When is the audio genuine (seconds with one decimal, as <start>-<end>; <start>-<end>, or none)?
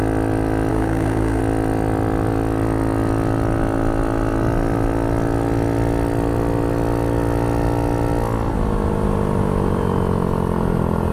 0.0-0.7; 1.4-11.1